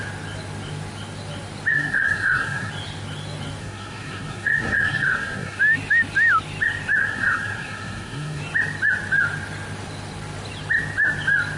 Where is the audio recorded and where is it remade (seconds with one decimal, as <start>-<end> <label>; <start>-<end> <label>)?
0.0-1.7 recorded; 1.7-2.7 remade; 2.7-3.6 recorded; 3.6-5.6 remade; 5.6-7.0 recorded; 7.0-8.4 remade; 8.4-11.6 recorded